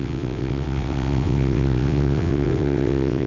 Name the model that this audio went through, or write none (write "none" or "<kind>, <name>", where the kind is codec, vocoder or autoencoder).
vocoder, WaveNeXt